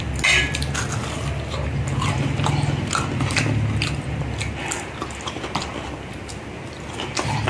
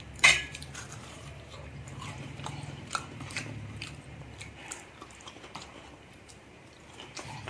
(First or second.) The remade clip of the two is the second